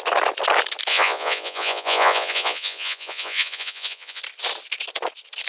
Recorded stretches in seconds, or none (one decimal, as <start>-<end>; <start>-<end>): 0.0-0.9; 4.2-5.5